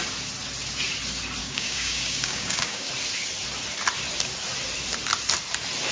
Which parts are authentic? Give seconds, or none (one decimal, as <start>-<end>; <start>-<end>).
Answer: 0.0-1.4; 2.9-5.9